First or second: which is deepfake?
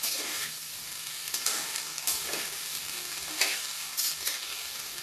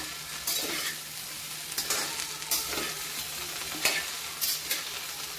first